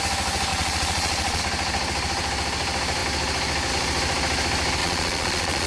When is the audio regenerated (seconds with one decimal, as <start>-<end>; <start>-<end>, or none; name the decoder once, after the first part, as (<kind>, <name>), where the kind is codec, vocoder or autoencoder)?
0.5-1.4 (vocoder, Vocos); 4.8-5.7